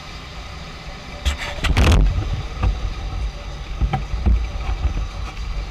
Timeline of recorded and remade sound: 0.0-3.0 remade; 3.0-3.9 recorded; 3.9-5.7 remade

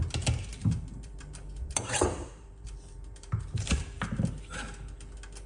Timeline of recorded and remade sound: 0.0-0.5 recorded; 0.5-3.8 remade; 3.8-5.5 recorded

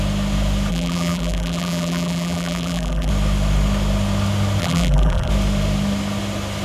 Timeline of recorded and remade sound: 0.0-0.7 recorded; 0.7-3.1 remade; 3.1-4.6 recorded; 4.6-5.3 remade; 5.3-6.6 recorded

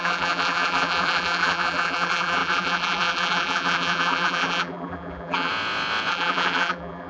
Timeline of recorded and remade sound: 0.0-5.5 remade; 5.5-6.1 recorded; 6.1-7.1 remade

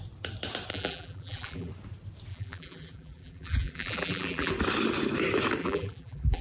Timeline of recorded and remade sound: 0.0-0.7 recorded; 0.7-1.7 remade; 1.7-2.3 recorded; 2.3-4.5 remade; 4.5-5.6 recorded; 5.6-6.4 remade

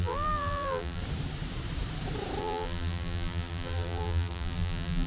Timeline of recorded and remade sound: 0.0-1.0 remade; 1.0-2.4 recorded; 2.4-5.1 remade

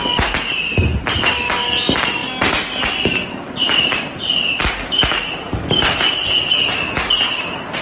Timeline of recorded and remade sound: 0.0-7.8 recorded